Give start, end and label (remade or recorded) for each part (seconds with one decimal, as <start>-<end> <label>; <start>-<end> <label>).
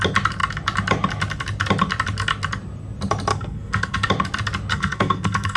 0.0-3.3 recorded; 3.3-4.1 remade; 4.1-4.7 recorded; 4.7-5.6 remade